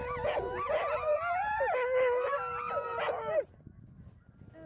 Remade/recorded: recorded